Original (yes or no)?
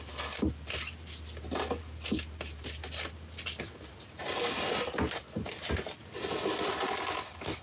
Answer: yes